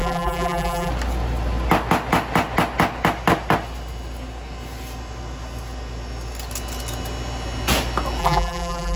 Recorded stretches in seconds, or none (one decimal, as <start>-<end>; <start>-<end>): 0.9-8.2